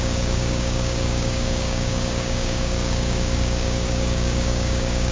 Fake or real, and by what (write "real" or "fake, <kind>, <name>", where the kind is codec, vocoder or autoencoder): fake, codec, DAC